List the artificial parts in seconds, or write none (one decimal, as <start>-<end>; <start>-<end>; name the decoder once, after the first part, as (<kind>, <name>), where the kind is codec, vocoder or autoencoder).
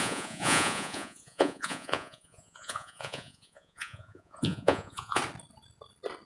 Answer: 0.0-5.2 (vocoder, Vocos)